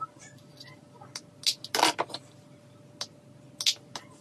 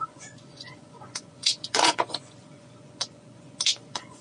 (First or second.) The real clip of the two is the first